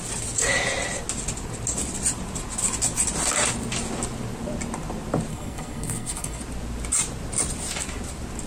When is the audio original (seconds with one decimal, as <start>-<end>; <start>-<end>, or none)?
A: 0.0-5.3; 6.4-8.5